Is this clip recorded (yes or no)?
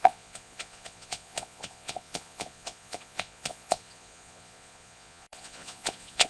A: no